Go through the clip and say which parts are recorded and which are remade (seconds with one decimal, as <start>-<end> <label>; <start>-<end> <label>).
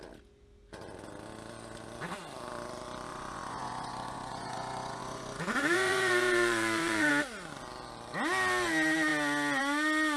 0.0-3.1 recorded; 3.1-7.1 remade; 7.1-10.2 recorded